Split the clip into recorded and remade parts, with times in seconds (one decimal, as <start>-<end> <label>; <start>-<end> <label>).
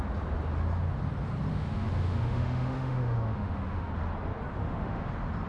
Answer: 0.0-1.5 recorded; 1.5-3.9 remade; 3.9-4.5 recorded; 4.5-5.1 remade; 5.1-5.5 recorded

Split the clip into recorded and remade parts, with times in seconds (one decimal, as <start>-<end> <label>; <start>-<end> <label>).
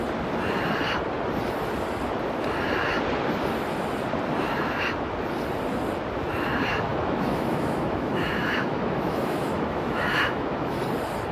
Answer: 0.0-6.9 recorded; 6.9-10.8 remade; 10.8-11.3 recorded